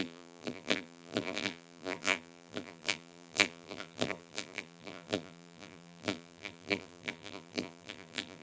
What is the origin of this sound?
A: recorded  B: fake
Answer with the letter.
B